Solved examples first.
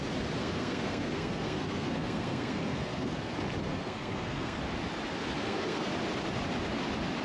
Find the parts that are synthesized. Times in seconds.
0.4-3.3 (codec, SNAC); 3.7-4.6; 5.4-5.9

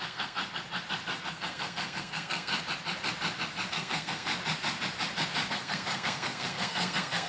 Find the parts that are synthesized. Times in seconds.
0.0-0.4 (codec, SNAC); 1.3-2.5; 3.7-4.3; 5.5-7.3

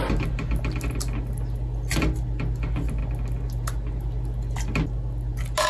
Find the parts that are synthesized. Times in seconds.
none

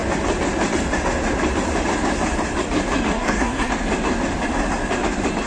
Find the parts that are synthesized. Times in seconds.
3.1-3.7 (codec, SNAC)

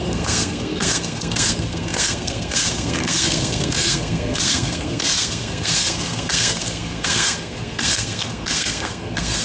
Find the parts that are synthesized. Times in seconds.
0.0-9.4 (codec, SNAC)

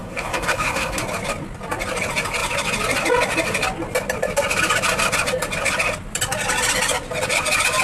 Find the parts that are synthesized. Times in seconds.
0.0-1.0 (codec, SNAC)

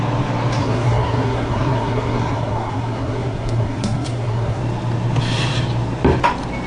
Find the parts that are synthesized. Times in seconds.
0.6-4.6 (codec, SNAC)